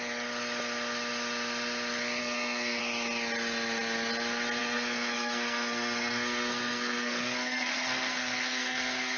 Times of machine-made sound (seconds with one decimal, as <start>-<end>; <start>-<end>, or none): 2.2-2.8; 4.6-9.2